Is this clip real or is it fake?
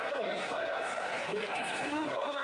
fake